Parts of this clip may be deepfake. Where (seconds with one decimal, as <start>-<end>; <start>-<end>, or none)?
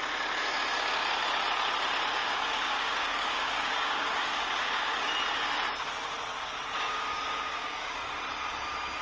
2.2-5.1; 6.3-8.1